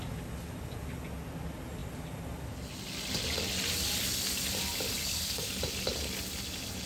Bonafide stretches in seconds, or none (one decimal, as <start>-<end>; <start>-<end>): 0.0-5.0; 5.6-6.9